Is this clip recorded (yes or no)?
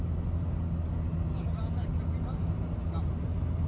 yes